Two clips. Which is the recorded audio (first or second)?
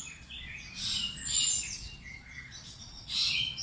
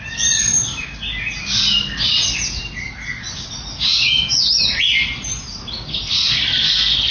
second